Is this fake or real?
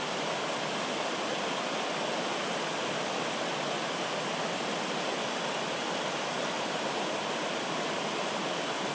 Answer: real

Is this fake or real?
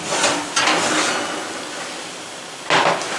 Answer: real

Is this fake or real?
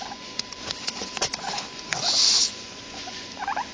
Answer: fake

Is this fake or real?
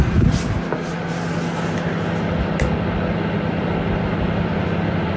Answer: real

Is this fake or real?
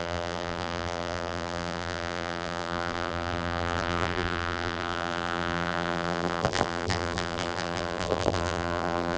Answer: fake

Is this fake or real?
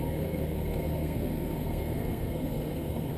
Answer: fake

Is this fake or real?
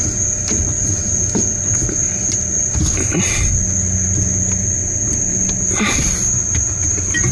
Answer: real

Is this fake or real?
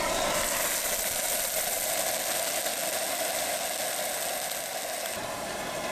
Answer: real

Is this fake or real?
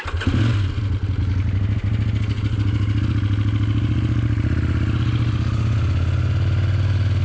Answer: real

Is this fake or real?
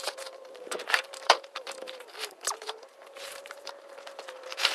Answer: fake